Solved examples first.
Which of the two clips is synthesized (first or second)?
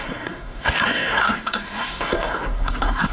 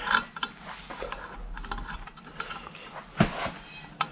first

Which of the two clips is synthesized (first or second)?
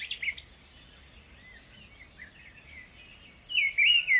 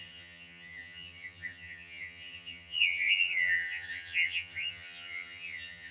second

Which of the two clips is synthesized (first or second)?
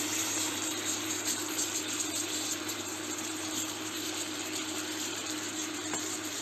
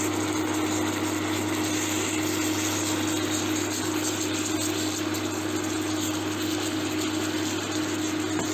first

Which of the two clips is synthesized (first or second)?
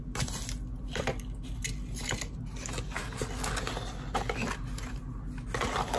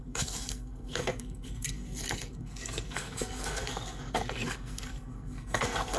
second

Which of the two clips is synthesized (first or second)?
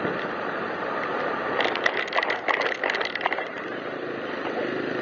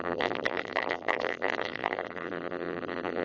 second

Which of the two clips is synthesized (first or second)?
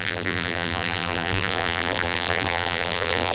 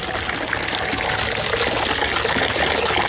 first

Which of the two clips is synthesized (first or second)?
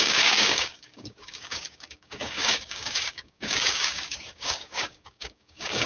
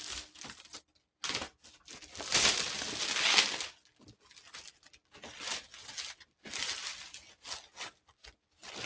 first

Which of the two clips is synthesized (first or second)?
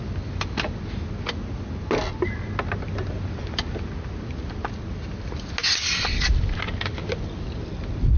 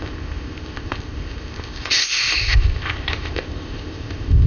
second